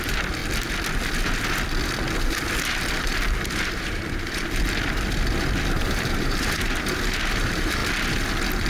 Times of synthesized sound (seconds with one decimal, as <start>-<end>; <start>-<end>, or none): 0.0-0.4; 2.9-4.4; 5.8-7.8